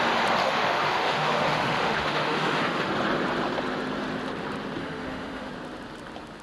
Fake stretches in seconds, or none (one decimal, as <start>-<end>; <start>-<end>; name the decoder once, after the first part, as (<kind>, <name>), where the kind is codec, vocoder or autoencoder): 0.4-2.9 (autoencoder, DAC-VAE); 4.8-5.5